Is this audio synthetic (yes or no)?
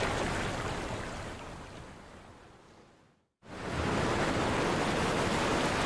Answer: no